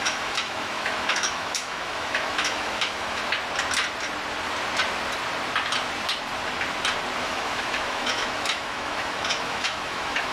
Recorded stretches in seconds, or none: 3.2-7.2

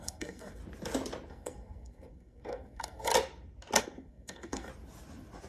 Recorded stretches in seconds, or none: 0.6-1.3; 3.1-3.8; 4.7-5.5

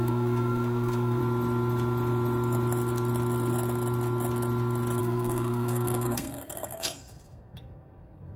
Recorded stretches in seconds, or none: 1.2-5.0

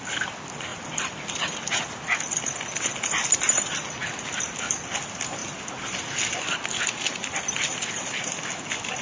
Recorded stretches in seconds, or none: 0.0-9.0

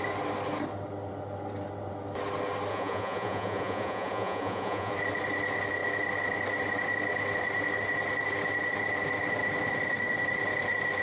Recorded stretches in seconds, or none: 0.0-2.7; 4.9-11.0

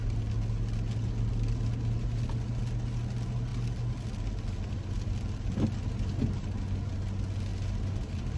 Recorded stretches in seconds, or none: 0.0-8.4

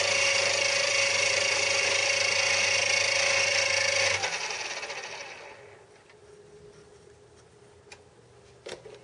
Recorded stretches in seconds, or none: 0.0-9.0

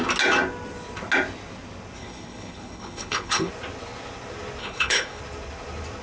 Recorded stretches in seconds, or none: 0.0-2.0; 3.5-4.6; 5.2-6.0